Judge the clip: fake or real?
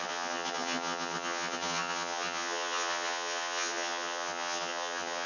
fake